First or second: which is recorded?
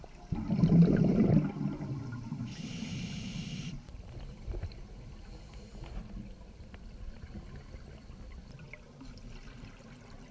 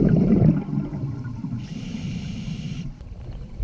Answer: first